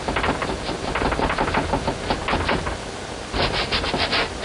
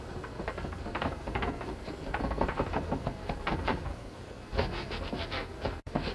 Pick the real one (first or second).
first